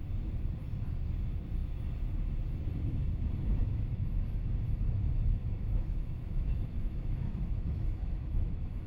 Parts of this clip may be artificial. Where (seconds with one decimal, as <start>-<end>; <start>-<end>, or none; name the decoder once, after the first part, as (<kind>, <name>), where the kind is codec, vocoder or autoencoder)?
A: 3.6-4.1 (autoencoder, DAC-VAE); 5.4-8.9

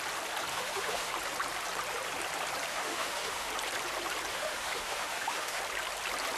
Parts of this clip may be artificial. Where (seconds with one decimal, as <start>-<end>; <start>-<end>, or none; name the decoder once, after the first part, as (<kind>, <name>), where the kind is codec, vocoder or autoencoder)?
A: 0.5-1.1 (autoencoder, DAC-VAE); 2.7-3.5; 4.3-5.6